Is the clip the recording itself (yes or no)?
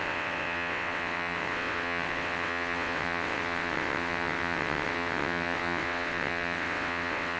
no